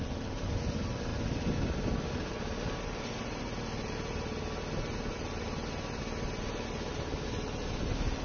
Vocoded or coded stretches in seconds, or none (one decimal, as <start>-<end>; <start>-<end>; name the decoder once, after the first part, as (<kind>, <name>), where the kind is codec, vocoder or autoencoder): none